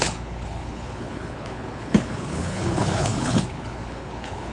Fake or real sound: fake